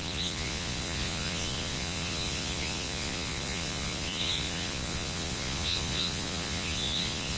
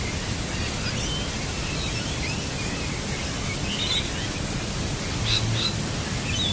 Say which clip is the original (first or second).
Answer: second